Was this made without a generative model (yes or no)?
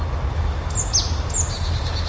yes